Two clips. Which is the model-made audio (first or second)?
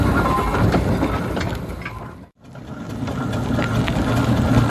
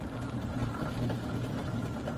second